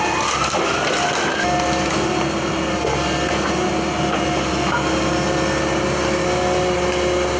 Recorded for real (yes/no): yes